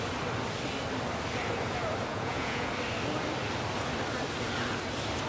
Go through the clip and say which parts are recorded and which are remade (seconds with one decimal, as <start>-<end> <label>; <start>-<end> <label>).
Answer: 0.0-2.1 recorded; 2.1-2.7 remade; 2.7-5.3 recorded

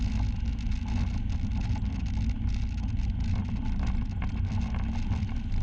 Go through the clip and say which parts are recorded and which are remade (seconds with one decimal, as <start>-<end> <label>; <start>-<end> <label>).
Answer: 0.0-5.6 recorded

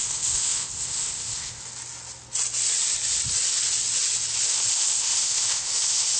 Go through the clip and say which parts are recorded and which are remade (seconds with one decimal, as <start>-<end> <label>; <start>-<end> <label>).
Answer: 0.0-1.6 remade; 1.6-4.4 recorded; 4.4-6.2 remade